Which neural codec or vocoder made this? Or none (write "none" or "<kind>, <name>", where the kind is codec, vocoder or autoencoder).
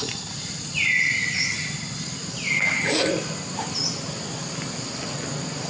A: none